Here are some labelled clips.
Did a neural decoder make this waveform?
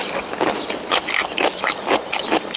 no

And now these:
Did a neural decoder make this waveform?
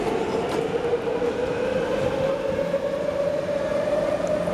no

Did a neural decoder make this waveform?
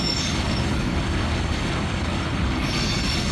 yes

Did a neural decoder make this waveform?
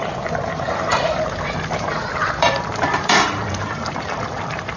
yes